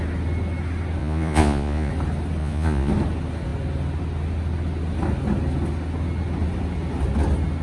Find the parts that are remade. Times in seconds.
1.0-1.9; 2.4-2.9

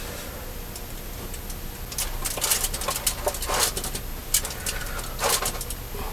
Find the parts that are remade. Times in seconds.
4.2-5.0

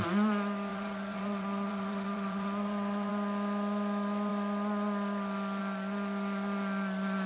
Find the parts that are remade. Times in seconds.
0.7-3.1